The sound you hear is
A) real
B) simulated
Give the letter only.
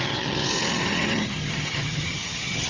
B